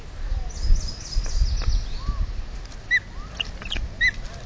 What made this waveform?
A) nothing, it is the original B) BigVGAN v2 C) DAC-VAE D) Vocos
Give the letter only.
A